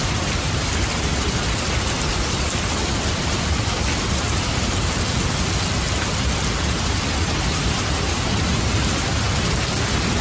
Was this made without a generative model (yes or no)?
yes